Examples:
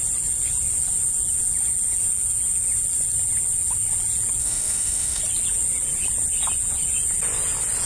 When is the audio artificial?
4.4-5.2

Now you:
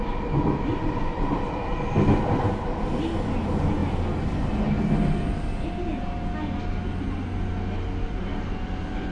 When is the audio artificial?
none

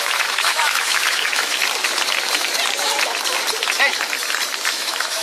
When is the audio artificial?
0.0-1.6; 4.7-5.2